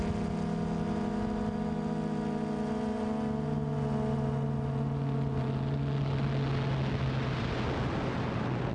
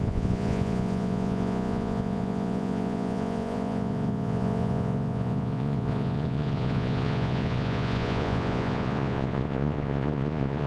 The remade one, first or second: second